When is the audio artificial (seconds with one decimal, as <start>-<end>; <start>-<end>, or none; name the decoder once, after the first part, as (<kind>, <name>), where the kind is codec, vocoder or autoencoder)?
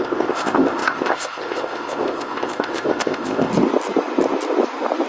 0.0-3.5 (codec, ZipCodec)